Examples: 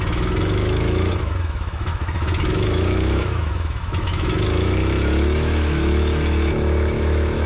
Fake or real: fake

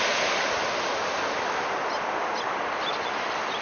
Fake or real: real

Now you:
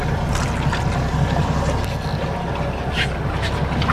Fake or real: real